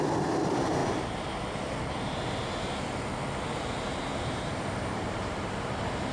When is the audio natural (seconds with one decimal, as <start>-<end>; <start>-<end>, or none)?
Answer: 0.0-4.1; 5.5-6.1